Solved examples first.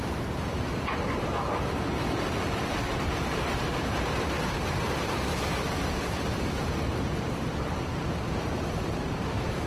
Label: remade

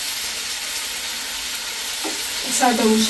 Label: recorded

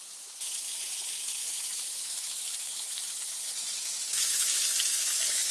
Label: remade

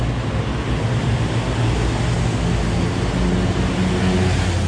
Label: recorded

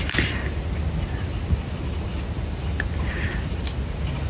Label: recorded